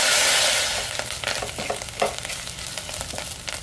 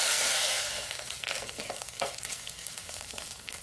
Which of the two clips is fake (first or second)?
second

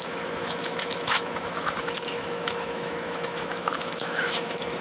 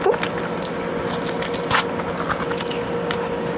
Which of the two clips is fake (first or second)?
first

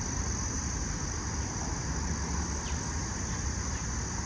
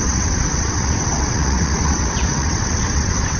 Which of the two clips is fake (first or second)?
second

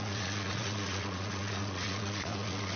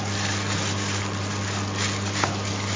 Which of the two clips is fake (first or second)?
first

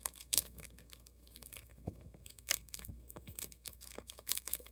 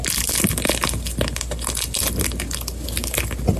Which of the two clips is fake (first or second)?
first